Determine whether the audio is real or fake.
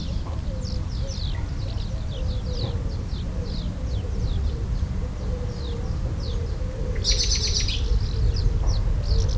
real